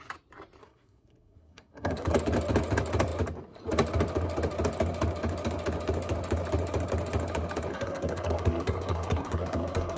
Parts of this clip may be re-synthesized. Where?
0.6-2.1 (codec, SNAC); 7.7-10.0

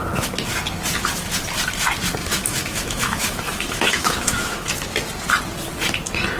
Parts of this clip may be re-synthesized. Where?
2.2-4.7 (autoencoder, DAC-VAE)